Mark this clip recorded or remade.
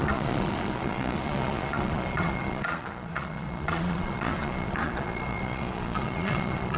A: remade